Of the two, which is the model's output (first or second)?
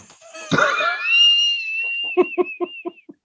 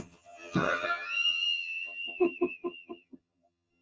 second